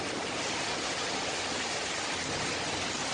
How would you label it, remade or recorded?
recorded